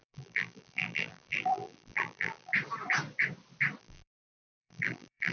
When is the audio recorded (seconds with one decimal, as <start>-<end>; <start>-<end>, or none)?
2.5-3.8